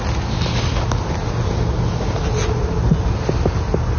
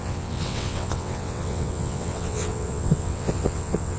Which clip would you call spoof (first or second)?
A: second